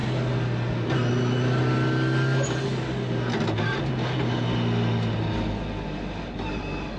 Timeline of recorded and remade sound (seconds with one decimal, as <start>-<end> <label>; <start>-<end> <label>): 0.0-7.0 recorded